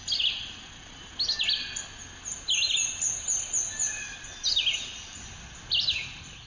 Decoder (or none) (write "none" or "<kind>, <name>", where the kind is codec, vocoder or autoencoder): none